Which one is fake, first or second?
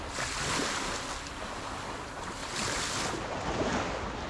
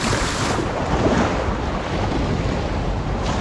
second